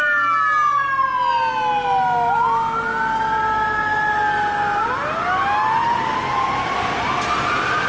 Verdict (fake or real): real